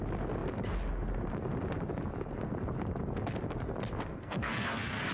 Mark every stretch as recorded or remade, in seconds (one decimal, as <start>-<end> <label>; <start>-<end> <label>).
0.0-4.1 recorded; 4.1-5.1 remade